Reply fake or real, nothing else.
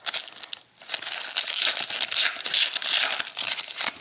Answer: real